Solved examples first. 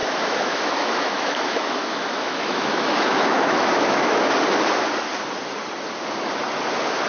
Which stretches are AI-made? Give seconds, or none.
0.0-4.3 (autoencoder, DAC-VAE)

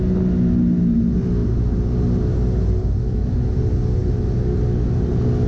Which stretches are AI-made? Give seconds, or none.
3.0-3.6 (autoencoder, DAC-VAE)

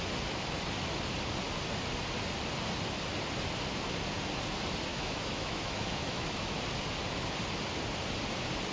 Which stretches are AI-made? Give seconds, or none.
4.9-6.6 (autoencoder, DAC-VAE)

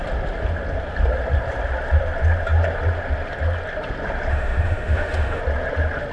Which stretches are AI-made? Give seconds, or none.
4.3-5.4 (autoencoder, DAC-VAE)